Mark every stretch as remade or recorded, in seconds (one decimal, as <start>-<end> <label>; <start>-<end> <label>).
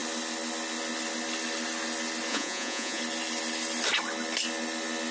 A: 0.0-2.3 recorded; 2.3-3.0 remade; 3.0-5.1 recorded